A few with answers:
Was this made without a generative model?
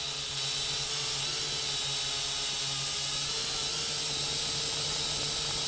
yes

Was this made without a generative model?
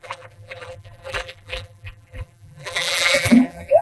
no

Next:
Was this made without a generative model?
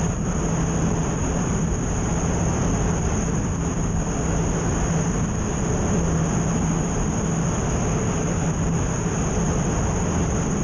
yes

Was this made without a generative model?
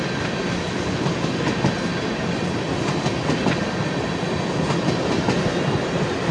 yes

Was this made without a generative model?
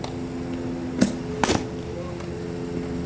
yes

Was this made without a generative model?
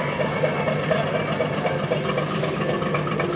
yes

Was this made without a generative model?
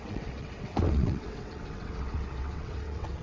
no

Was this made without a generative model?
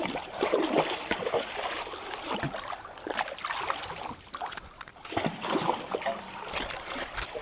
yes